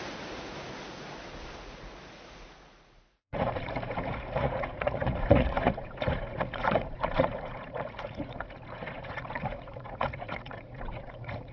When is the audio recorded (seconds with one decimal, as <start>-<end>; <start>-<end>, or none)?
none